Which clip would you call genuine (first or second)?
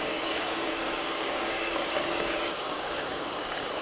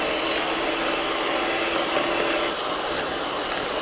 second